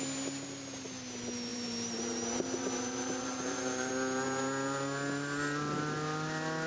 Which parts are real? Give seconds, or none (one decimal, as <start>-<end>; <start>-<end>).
0.0-1.5; 3.9-6.7